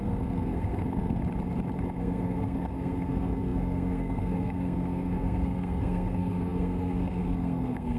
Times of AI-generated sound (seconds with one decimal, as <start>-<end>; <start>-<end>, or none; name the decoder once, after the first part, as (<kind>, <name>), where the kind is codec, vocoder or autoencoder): 0.0-1.2 (codec, SNAC); 2.0-8.0